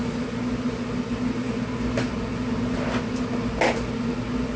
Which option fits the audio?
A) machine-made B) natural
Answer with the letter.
B